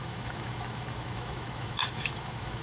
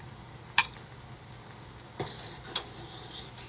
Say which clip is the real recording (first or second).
second